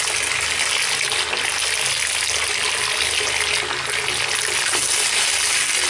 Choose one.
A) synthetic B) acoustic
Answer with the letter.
B